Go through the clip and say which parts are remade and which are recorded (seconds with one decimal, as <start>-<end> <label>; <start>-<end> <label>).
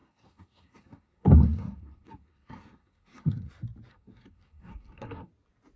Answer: 0.0-3.5 remade; 3.5-3.9 recorded; 3.9-5.3 remade; 5.3-5.8 recorded